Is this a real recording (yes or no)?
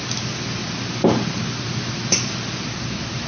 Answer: yes